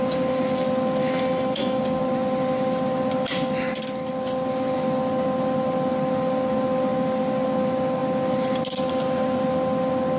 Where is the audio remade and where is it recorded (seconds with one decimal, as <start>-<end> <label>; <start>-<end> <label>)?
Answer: 0.0-1.0 recorded; 1.0-1.8 remade; 1.8-10.2 recorded